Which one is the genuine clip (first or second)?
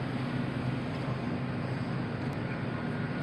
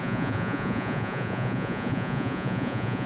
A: first